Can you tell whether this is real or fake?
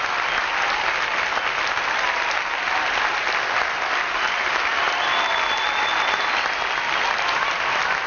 real